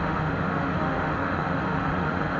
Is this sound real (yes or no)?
no